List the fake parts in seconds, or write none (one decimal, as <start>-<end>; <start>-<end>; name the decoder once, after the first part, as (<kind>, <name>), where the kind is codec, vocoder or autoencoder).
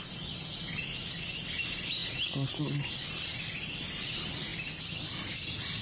none